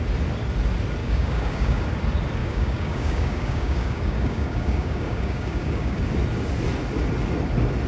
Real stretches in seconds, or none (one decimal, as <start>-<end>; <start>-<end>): 0.0-1.0; 1.8-2.4; 6.0-7.9